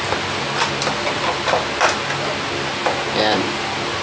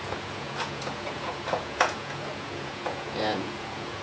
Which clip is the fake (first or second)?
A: second